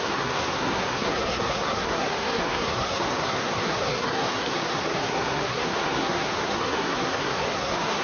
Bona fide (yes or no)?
no